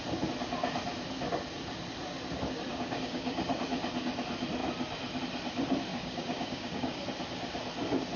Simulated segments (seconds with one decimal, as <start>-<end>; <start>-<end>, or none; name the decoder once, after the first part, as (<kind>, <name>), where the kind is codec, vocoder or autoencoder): 2.7-3.4 (codec, DAC); 5.9-7.0